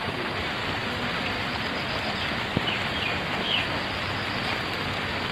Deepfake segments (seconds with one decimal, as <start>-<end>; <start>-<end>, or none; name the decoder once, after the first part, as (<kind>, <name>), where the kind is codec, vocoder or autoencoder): none